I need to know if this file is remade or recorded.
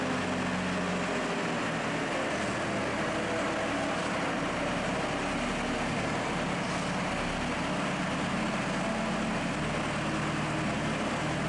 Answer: recorded